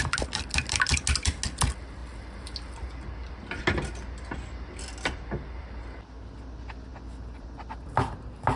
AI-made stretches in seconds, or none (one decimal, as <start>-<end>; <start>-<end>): none